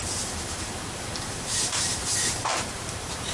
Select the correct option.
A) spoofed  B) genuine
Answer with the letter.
A